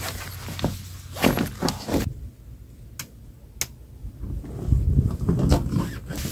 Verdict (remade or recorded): recorded